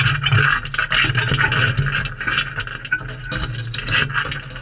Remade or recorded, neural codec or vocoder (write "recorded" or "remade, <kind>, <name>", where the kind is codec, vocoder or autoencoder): recorded